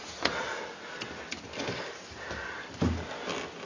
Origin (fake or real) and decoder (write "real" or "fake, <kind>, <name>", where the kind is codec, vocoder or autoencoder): real